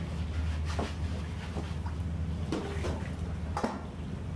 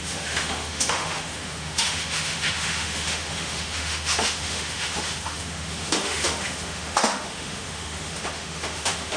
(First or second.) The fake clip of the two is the second